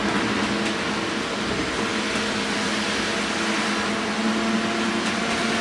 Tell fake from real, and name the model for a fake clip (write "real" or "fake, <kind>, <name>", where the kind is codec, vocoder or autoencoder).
real